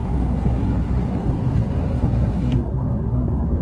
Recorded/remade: remade